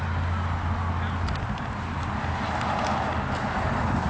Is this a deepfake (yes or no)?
no